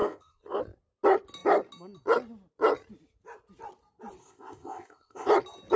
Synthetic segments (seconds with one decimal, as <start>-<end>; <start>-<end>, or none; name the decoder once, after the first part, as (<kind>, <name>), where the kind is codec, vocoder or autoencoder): 0.0-0.6 (codec, ZipCodec); 4.2-5.3